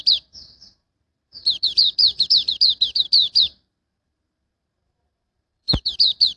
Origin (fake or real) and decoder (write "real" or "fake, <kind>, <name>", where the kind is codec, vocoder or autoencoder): fake, vocoder, BigVGAN v2